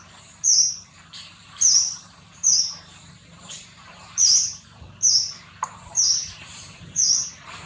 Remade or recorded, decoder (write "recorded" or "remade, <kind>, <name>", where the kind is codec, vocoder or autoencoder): remade, vocoder, BigVGAN v2